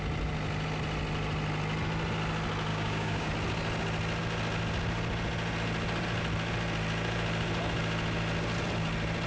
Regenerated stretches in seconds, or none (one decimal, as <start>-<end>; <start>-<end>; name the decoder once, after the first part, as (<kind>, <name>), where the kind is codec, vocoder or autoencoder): 2.7-3.3 (codec, DAC)